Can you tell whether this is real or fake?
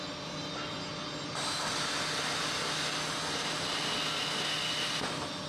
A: real